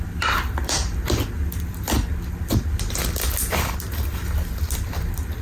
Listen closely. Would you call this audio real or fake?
fake